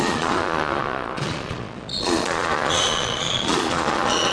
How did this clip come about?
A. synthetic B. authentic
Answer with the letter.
A